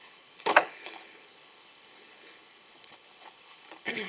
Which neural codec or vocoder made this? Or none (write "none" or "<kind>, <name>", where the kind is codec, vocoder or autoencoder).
codec, HILCodec